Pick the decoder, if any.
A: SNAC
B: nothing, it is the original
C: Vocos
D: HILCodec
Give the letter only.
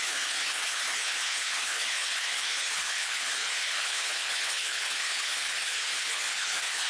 D